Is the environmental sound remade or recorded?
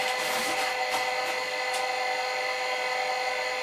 recorded